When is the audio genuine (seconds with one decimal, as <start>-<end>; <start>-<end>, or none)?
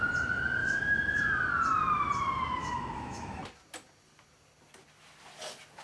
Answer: 0.0-0.6; 1.2-2.6; 3.4-5.8